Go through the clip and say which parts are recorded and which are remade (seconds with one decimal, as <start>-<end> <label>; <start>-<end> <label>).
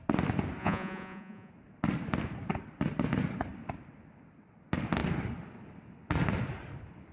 0.0-0.6 recorded; 0.6-1.5 remade; 1.5-7.1 recorded